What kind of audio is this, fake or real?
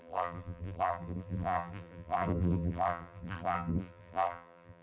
fake